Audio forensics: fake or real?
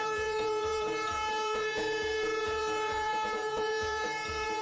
fake